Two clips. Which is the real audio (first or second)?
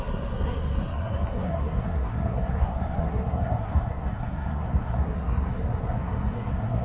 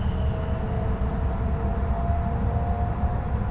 second